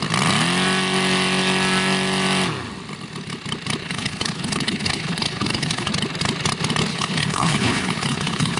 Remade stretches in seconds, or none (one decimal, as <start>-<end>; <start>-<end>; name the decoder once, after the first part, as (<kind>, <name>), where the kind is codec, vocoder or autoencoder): 3.8-5.9 (codec, HILCodec); 6.9-8.6

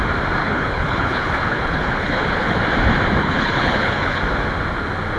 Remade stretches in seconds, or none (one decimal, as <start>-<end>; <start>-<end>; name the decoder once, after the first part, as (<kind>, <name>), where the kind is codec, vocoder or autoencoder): 0.4-2.6 (codec, HILCodec); 3.2-4.2

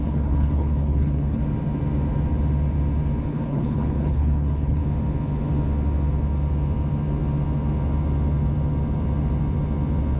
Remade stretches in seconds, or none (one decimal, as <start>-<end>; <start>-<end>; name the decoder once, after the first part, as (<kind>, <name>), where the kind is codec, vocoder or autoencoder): 0.0-1.4 (codec, HILCodec); 3.3-4.8

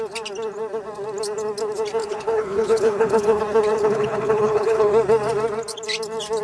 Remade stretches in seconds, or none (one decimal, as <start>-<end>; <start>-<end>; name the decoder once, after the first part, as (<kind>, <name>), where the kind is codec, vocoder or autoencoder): 2.0-3.4 (codec, HILCodec); 3.8-4.9

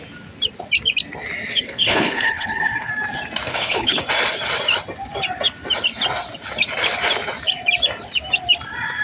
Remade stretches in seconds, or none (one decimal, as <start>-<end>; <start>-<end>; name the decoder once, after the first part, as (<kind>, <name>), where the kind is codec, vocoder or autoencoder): 1.5-2.9 (codec, HILCodec); 3.5-4.0